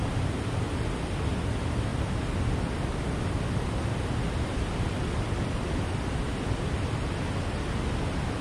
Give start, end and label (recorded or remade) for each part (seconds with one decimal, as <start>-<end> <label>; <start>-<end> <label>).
0.0-8.4 recorded